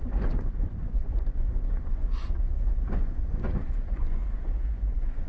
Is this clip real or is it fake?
fake